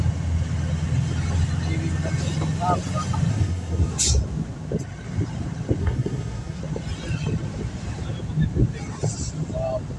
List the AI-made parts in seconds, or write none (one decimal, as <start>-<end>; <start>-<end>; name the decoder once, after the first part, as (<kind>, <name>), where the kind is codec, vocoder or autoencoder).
3.3-3.9 (codec, SNAC); 5.8-6.6